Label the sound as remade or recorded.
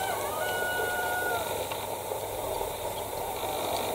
remade